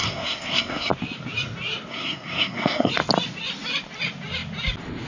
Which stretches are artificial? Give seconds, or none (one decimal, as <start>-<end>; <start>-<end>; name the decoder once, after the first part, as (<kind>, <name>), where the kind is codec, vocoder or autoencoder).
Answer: 0.0-0.9 (codec, SNAC); 1.9-2.9